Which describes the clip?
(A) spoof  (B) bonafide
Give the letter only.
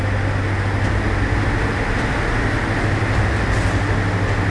B